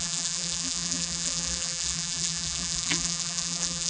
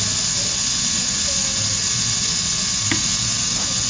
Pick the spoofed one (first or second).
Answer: first